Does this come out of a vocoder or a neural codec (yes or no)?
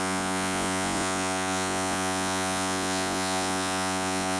yes